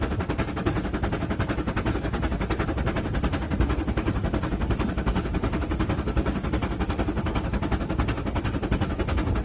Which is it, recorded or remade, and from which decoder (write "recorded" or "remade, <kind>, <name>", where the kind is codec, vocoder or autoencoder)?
recorded